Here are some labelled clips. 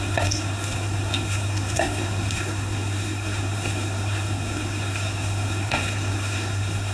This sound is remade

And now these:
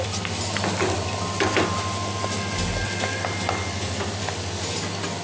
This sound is recorded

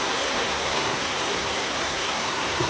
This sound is remade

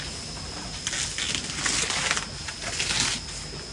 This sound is recorded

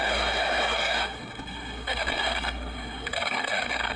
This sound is remade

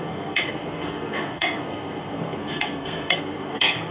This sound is remade